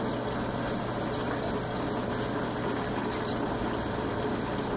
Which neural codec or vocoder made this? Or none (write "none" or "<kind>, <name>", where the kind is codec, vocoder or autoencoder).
none